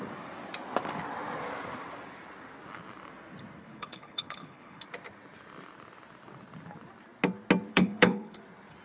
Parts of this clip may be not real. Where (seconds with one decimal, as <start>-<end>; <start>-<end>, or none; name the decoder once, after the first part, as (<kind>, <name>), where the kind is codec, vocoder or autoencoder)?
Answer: 3.6-4.8 (codec, HILCodec); 7.7-8.4